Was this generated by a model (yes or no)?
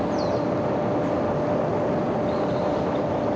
no